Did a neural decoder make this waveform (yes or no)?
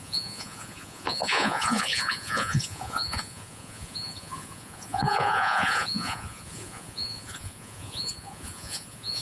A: yes